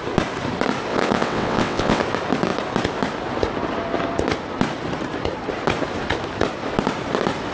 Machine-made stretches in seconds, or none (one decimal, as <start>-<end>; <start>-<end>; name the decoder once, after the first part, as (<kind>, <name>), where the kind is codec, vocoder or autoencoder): 0.9-2.0 (vocoder, WaveNeXt)